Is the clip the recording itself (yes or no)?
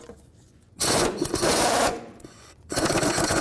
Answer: no